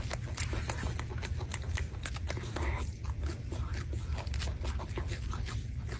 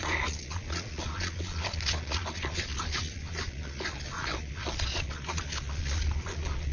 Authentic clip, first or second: first